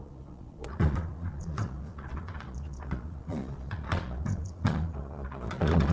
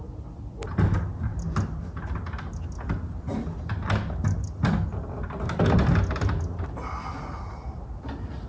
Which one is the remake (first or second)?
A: first